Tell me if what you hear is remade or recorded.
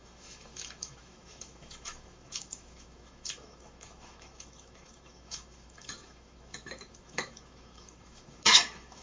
remade